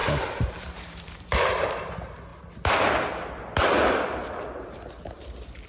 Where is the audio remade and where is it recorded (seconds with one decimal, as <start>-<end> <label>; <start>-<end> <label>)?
0.0-1.9 remade; 1.9-5.7 recorded